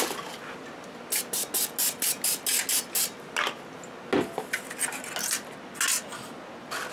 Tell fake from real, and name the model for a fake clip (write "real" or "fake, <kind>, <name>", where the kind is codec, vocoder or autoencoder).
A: real